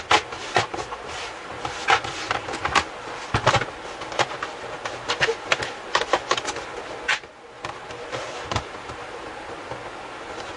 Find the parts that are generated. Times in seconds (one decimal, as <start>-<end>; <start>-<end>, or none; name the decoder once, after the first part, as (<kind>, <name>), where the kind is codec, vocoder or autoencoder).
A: none